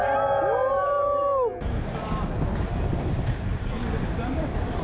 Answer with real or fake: real